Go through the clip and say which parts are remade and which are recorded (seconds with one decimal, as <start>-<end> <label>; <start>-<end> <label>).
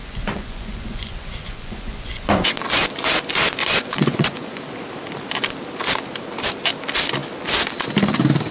0.0-2.6 remade; 2.6-3.6 recorded; 3.6-4.5 remade; 4.5-8.5 recorded